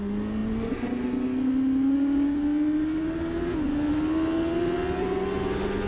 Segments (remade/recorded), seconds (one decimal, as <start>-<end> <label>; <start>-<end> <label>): 0.0-5.9 recorded